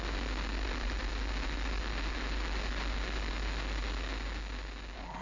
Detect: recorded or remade recorded